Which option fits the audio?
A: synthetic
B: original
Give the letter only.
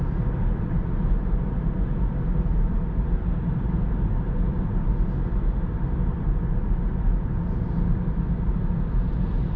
B